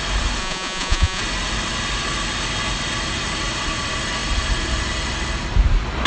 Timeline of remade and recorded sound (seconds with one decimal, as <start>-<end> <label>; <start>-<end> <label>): 0.0-0.4 recorded; 0.4-1.2 remade; 1.2-6.1 recorded